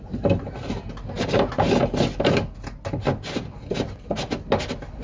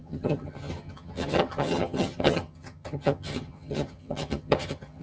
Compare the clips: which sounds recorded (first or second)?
first